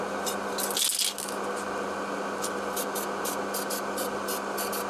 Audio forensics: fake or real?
real